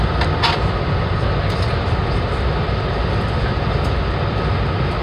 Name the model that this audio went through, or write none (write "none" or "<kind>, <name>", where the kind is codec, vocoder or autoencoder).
none